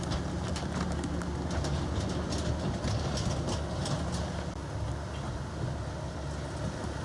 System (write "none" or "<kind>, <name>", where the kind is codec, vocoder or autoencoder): none